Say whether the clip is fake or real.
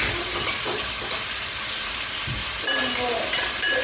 real